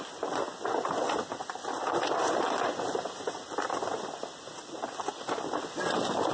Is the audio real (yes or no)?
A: yes